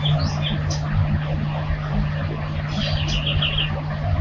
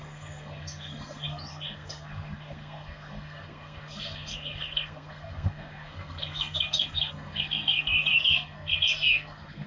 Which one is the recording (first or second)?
first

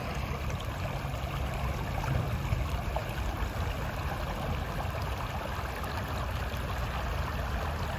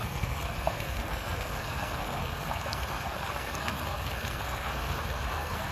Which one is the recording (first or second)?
first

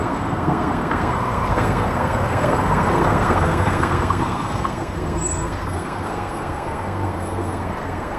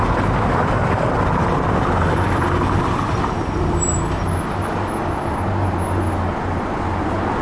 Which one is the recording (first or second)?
second